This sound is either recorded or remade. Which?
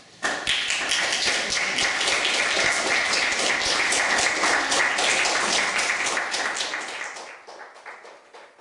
recorded